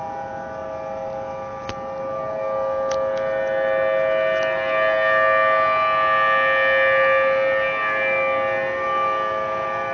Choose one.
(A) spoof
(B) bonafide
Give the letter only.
B